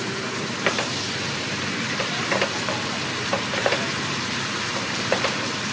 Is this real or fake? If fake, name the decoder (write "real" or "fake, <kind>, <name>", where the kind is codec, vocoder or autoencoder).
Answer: fake, vocoder, BigVGAN v2